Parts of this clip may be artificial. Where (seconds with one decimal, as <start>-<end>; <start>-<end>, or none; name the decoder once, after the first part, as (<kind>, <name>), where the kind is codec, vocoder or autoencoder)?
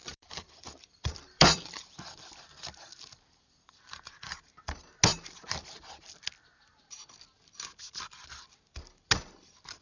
0.0-4.6 (vocoder, BigVGAN v2)